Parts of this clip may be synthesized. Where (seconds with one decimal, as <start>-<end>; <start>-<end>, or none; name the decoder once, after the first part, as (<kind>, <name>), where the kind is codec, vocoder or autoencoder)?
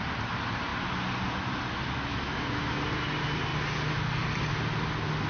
2.1-2.8 (autoencoder, DAC-VAE)